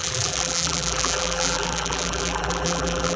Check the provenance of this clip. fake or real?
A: fake